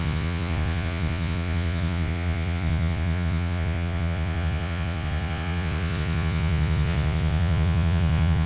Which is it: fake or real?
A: fake